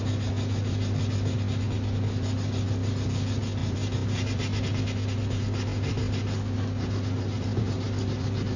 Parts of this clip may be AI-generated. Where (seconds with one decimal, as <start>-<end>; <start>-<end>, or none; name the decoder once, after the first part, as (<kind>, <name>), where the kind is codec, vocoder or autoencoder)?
none